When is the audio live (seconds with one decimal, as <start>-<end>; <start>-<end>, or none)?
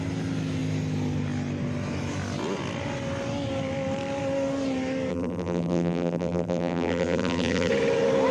0.0-5.1; 7.7-8.3